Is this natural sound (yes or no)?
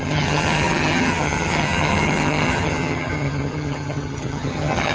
no